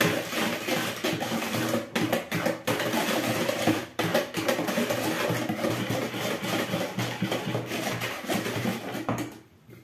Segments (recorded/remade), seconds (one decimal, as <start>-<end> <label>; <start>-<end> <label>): 0.0-4.1 recorded; 4.1-4.7 remade; 4.7-9.8 recorded

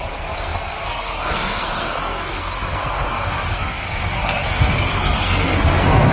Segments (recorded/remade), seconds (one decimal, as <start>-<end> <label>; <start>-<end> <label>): 0.0-6.1 remade

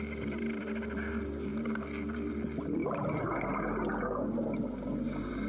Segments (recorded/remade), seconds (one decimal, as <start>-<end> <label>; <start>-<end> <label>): 0.0-5.5 recorded

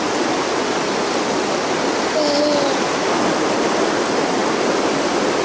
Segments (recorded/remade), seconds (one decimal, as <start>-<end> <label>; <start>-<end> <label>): 0.0-5.4 recorded

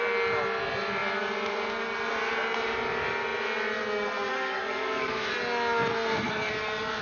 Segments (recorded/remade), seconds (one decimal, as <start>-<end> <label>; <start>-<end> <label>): 0.0-4.3 recorded; 4.3-5.3 remade; 5.3-5.9 recorded; 5.9-6.5 remade; 6.5-7.0 recorded